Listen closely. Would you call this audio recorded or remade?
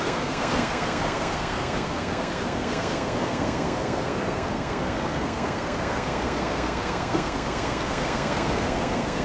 remade